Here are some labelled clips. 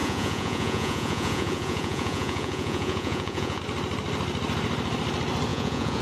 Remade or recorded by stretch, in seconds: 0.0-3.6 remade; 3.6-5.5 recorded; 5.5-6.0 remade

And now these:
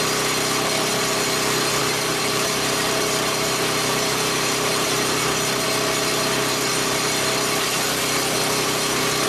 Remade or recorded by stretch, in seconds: 0.0-1.8 recorded; 1.8-5.2 remade; 5.2-9.3 recorded

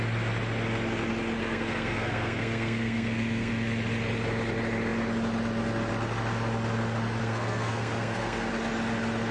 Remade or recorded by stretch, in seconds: 0.0-1.4 recorded; 1.4-3.5 remade; 3.5-7.2 recorded; 7.2-8.5 remade; 8.5-9.3 recorded